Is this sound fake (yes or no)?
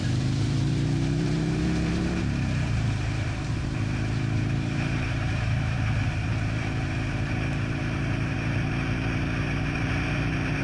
yes